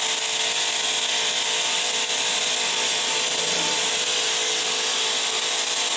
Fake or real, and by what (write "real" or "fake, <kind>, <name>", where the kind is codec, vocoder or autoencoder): real